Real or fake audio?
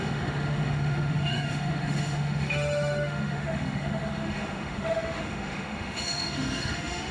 fake